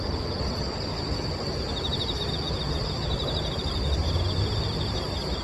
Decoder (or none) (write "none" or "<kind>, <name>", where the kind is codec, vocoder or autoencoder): none